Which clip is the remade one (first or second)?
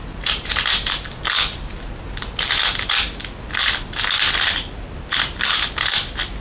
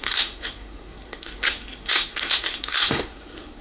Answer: second